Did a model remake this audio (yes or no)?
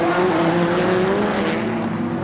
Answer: no